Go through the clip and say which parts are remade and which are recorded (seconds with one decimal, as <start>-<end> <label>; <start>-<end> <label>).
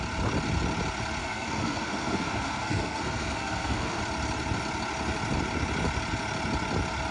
0.0-1.2 recorded; 1.2-4.0 remade; 4.0-7.1 recorded